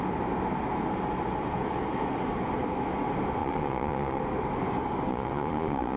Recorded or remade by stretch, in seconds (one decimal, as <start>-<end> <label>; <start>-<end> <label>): 0.0-3.4 recorded; 3.4-4.2 remade; 4.2-5.1 recorded; 5.1-6.0 remade